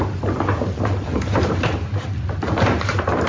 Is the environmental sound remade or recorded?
remade